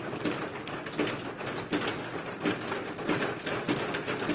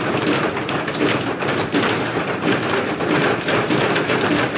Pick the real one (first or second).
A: first